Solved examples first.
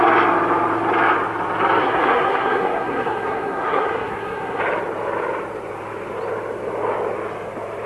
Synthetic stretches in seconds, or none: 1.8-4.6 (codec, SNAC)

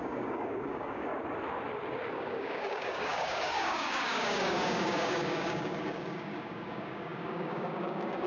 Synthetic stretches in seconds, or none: 0.0-1.1 (codec, DAC); 2.1-8.3

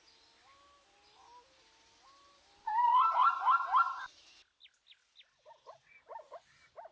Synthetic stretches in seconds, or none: none